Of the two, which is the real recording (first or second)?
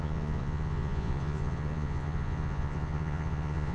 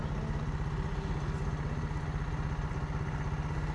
second